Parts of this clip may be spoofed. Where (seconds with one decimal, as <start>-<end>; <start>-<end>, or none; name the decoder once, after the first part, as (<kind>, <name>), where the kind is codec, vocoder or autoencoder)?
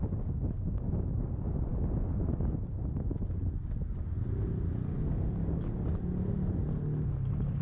none